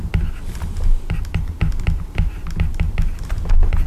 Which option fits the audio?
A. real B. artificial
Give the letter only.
A